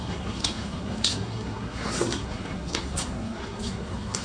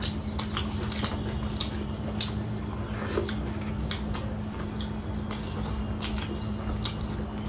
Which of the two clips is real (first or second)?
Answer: second